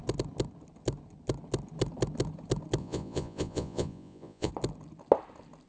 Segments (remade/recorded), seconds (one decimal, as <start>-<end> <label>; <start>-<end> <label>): 0.0-2.8 recorded; 2.8-4.5 remade; 4.5-5.7 recorded